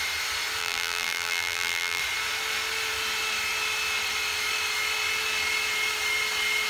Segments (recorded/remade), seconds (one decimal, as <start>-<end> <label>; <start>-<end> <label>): 0.0-0.6 recorded; 0.6-2.0 remade; 2.0-6.7 recorded